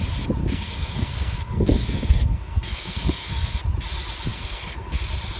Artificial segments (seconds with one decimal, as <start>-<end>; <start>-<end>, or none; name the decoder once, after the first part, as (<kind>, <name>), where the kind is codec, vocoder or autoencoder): 0.4-3.6 (codec, SNAC); 4.3-5.0